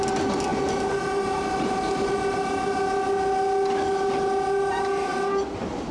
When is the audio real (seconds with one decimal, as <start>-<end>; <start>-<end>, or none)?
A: 0.0-5.9